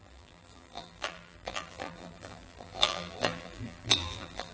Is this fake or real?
fake